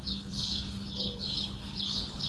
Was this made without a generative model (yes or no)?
no